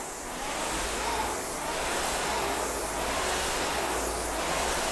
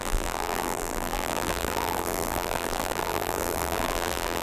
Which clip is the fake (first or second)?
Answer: second